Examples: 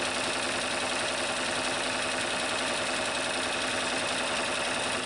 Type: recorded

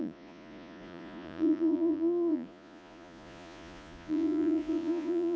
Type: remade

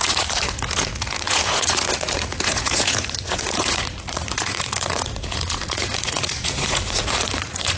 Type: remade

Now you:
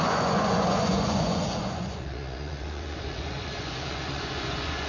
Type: remade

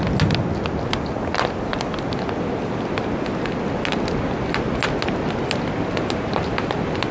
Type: recorded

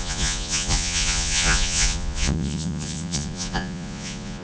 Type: remade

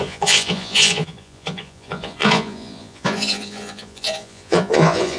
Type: remade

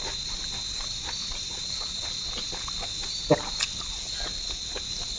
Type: recorded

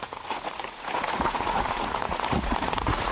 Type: remade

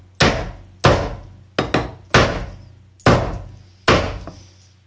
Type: recorded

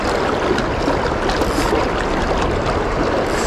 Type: recorded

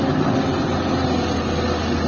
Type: recorded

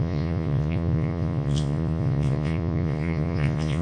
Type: remade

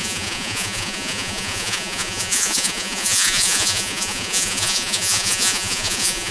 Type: remade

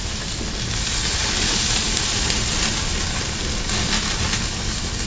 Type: recorded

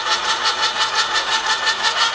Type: remade